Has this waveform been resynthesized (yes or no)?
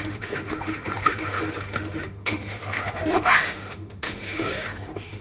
yes